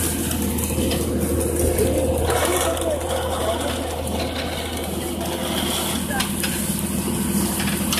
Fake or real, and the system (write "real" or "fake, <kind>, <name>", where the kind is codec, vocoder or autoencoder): real